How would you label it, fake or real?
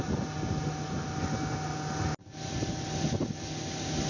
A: real